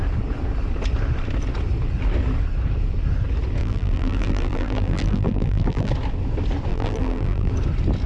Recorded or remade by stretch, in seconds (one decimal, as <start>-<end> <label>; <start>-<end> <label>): 0.0-3.6 recorded; 3.6-5.9 remade; 5.9-6.7 recorded; 6.7-7.5 remade; 7.5-8.1 recorded